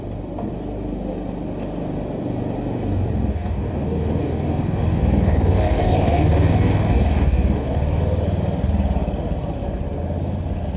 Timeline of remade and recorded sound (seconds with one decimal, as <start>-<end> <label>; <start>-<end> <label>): 0.0-3.3 recorded; 3.3-8.0 remade; 8.0-10.8 recorded

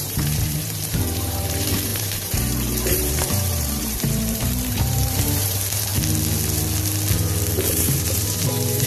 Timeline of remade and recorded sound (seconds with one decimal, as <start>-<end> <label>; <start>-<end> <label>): 0.0-5.9 remade; 5.9-7.7 recorded; 7.7-8.9 remade

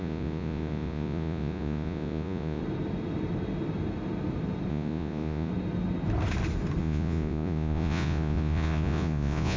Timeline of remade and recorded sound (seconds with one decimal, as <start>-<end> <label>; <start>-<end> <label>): 0.0-2.6 remade; 2.6-4.7 recorded; 4.7-5.5 remade; 5.5-6.8 recorded; 6.8-9.6 remade